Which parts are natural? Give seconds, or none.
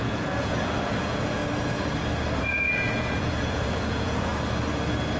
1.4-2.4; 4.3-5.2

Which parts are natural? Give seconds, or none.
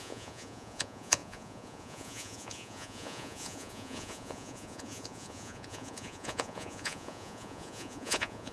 none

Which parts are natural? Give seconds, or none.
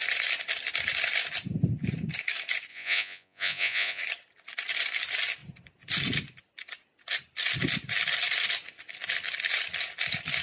0.0-2.7; 4.0-10.4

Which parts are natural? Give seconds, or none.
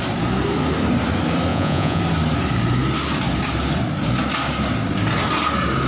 0.0-1.5; 2.0-5.9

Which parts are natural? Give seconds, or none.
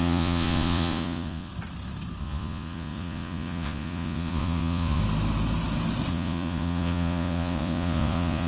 1.5-2.2; 5.0-6.1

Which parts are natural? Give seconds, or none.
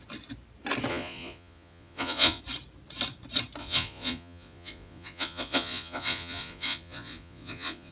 0.0-0.9; 2.4-3.6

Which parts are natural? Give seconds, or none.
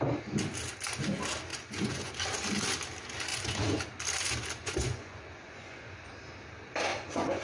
0.0-1.5; 2.1-3.3; 3.8-4.6; 6.1-6.9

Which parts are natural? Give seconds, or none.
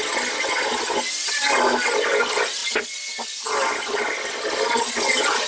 0.0-5.5